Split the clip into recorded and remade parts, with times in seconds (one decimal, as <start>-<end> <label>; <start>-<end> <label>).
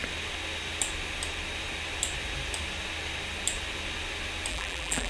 0.0-4.5 recorded; 4.5-5.1 remade